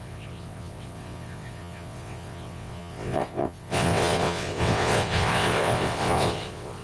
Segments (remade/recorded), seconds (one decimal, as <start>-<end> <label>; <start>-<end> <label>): 0.0-6.8 remade